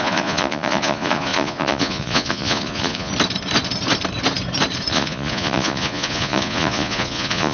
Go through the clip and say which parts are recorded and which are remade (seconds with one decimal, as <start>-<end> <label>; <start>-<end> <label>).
0.0-3.1 remade; 3.1-4.9 recorded; 4.9-7.5 remade